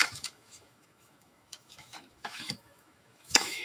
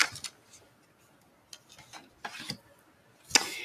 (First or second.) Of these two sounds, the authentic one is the second